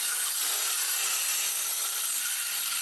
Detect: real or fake real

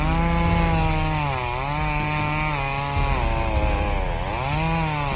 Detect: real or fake real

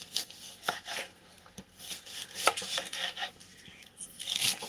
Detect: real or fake fake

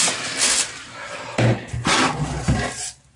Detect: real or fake real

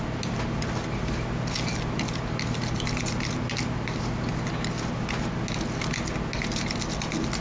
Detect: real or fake real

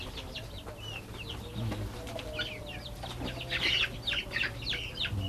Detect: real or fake real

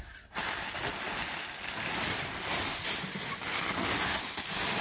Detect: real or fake real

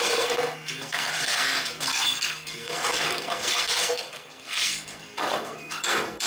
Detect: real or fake fake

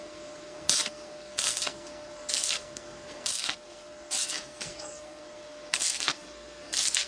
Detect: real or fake fake